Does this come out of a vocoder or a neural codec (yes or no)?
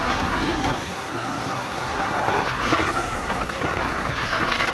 yes